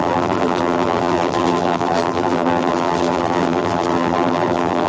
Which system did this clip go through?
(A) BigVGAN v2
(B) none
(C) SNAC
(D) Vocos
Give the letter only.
A